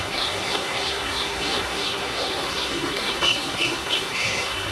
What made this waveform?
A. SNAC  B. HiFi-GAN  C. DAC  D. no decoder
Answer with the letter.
A